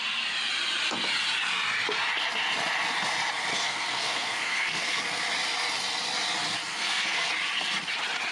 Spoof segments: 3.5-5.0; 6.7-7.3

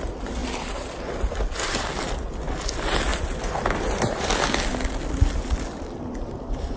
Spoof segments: none

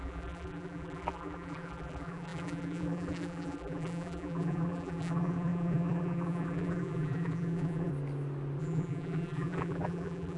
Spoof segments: 0.0-7.9; 8.6-10.4

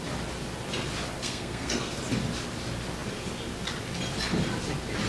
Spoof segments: 1.2-2.0

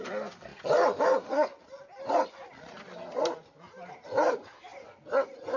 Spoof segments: none